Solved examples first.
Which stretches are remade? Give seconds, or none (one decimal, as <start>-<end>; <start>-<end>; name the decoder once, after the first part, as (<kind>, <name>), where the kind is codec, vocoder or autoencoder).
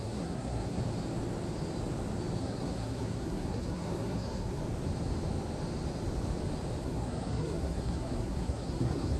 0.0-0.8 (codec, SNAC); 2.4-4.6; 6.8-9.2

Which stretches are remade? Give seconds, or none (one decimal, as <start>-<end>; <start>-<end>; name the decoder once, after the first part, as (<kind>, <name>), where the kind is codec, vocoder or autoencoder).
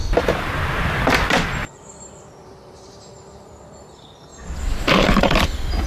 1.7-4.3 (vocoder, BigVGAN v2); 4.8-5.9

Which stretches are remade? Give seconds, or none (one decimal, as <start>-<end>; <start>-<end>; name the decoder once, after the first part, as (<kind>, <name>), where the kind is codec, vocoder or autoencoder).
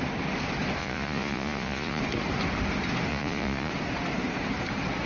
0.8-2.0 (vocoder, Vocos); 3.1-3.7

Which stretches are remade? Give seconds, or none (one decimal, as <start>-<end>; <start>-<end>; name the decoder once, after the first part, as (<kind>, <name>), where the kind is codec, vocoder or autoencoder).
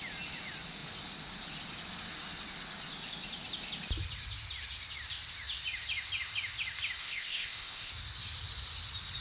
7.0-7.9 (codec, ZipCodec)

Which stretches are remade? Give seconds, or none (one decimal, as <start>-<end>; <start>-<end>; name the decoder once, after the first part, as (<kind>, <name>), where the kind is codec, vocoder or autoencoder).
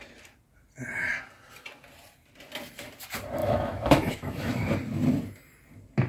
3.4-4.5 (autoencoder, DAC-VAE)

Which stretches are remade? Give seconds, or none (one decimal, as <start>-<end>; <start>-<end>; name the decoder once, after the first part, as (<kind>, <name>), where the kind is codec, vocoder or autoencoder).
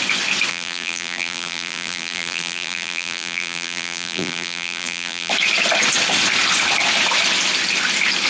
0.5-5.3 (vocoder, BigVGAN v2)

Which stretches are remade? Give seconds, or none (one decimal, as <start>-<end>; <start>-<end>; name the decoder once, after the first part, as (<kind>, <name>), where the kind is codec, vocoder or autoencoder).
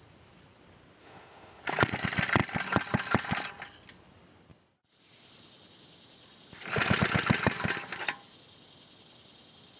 1.0-1.6 (autoencoder, DAC-VAE)